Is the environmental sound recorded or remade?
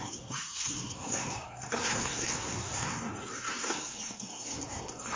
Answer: remade